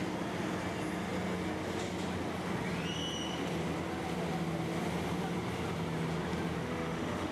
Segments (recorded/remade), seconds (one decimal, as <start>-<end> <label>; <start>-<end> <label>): 0.0-6.6 recorded; 6.6-7.3 remade